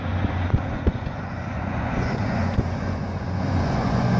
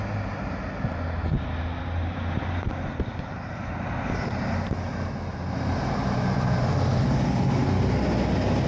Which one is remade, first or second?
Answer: first